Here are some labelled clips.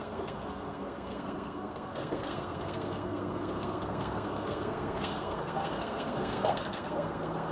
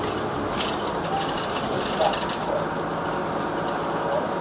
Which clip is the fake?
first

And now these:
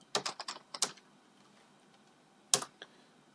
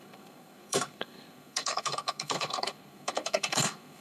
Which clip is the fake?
second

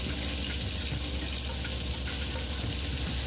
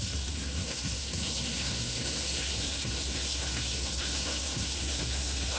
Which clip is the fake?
second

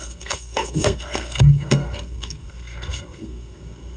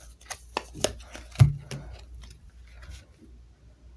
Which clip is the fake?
first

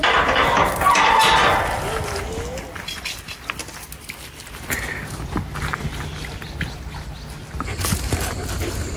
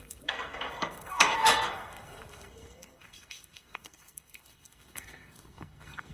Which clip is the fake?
second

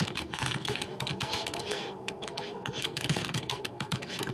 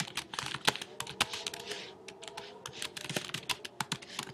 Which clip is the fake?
first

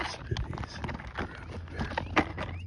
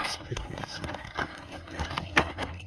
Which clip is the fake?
second